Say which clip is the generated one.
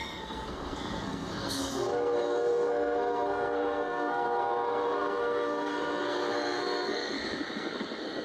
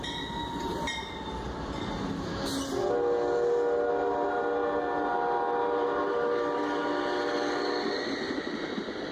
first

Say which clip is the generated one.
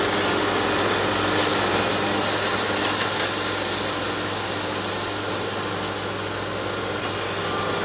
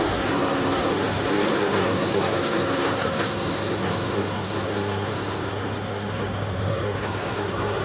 second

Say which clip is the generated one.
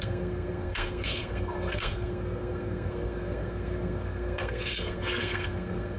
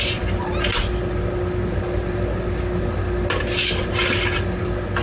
first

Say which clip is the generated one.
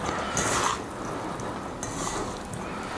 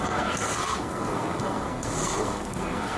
second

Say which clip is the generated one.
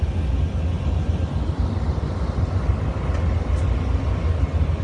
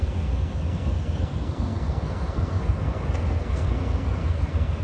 second